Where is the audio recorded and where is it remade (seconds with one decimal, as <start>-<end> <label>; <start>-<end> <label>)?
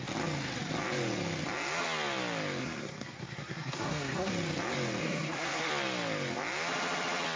0.0-2.6 recorded; 2.6-4.3 remade; 4.3-5.0 recorded; 5.0-5.7 remade; 5.7-7.4 recorded